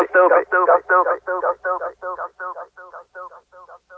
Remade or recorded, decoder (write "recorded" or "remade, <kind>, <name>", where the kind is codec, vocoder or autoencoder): recorded